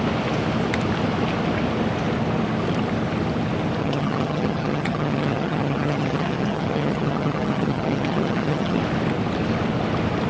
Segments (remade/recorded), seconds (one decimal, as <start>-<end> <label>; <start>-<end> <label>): 0.0-3.8 recorded; 3.8-8.8 remade; 8.8-10.3 recorded